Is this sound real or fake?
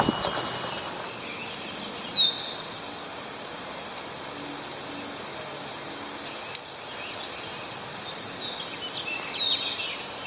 real